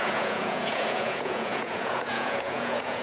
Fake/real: fake